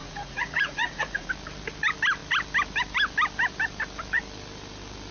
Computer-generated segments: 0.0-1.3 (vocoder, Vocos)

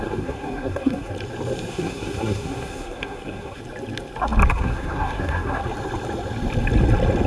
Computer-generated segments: 0.0-1.1 (codec, SNAC); 1.7-3.6; 4.5-5.6

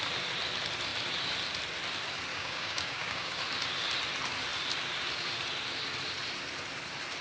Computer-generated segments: 2.3-3.4 (codec, DAC)